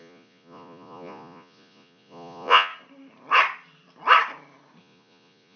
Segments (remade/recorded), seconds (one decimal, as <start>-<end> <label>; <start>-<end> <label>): 0.0-2.7 remade; 2.7-4.8 recorded; 4.8-5.6 remade